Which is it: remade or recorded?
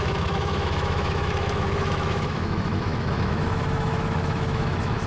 remade